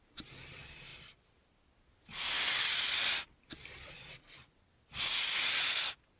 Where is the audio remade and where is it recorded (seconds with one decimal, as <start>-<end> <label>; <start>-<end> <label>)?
0.0-6.2 recorded